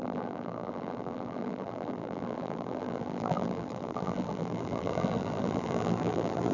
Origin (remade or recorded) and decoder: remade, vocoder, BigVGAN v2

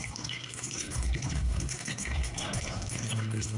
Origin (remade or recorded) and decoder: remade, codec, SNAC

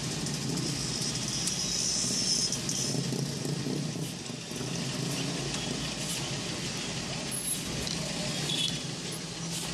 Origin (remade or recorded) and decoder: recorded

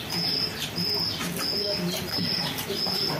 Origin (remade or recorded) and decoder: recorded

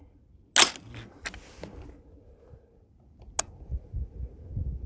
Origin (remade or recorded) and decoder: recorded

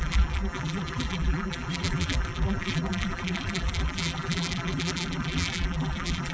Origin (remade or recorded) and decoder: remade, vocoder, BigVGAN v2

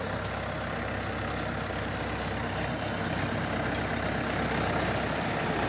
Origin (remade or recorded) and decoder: recorded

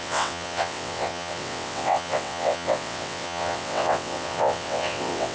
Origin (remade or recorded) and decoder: remade, vocoder, WaveNeXt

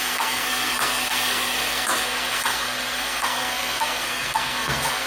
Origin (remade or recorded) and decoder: remade, codec, SNAC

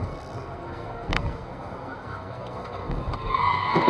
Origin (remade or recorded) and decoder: remade, codec, SNAC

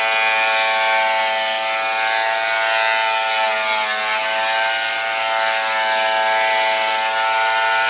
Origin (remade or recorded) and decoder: recorded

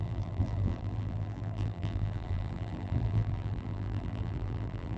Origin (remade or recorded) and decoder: remade, vocoder, BigVGAN v2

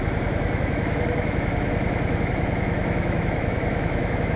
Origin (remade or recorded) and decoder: remade, autoencoder, DAC-VAE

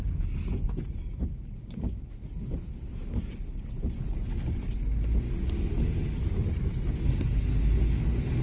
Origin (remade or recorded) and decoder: recorded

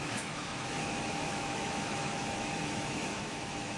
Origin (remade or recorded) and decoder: remade, autoencoder, DAC-VAE